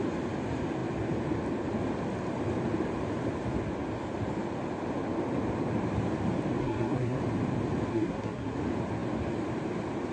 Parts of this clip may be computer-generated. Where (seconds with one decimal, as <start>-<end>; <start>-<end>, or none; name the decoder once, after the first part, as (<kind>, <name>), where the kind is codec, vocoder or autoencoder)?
6.6-7.2 (codec, SNAC); 7.9-8.6